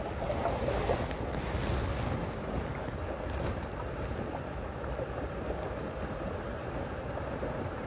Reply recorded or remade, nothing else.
recorded